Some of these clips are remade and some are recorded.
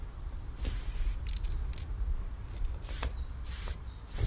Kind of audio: recorded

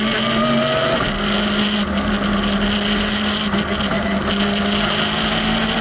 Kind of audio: recorded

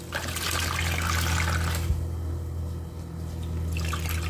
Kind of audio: recorded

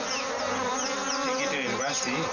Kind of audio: recorded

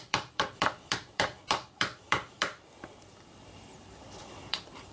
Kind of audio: remade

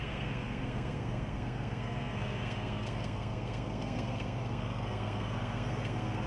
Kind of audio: remade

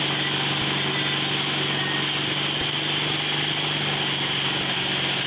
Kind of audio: recorded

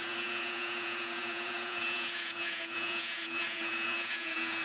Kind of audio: remade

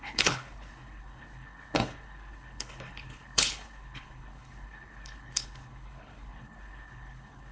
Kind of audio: remade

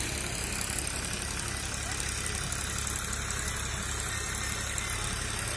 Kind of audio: recorded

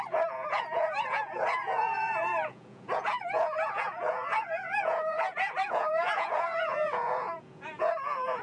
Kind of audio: remade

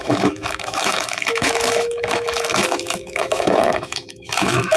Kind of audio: remade